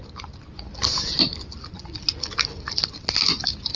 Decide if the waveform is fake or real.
real